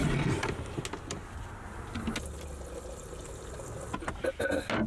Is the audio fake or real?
real